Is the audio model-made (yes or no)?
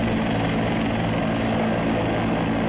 no